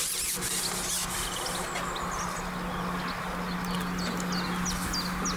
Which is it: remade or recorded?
recorded